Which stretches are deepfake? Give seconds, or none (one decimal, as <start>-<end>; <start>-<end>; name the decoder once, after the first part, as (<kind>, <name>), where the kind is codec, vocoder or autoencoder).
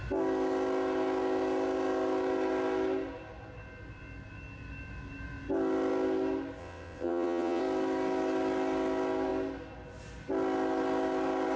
6.6-7.6 (vocoder, WaveNeXt)